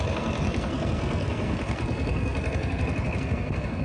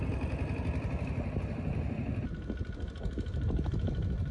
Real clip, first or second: second